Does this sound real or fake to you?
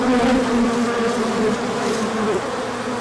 real